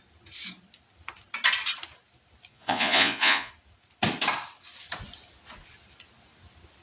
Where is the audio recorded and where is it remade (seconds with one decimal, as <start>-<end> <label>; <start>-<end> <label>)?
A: 0.0-2.5 recorded; 2.5-3.5 remade; 3.5-6.8 recorded